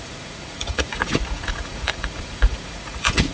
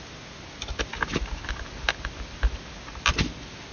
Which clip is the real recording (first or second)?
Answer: second